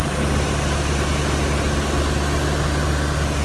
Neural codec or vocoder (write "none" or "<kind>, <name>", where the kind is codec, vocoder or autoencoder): none